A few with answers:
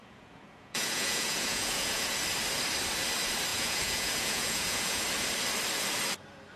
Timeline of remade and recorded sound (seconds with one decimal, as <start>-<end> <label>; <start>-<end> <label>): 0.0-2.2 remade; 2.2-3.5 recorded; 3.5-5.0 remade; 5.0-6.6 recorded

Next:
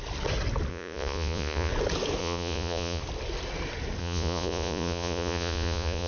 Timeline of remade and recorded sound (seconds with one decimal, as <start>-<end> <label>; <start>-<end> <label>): 0.0-0.7 recorded; 0.7-1.7 remade; 1.7-2.2 recorded; 2.2-3.0 remade; 3.0-4.0 recorded; 4.0-6.1 remade

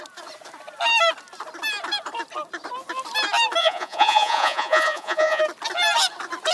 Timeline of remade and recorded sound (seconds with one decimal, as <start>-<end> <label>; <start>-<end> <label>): 0.0-3.6 recorded; 3.6-5.4 remade; 5.4-6.5 recorded